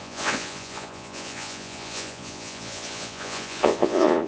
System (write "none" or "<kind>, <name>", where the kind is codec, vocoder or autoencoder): vocoder, Vocos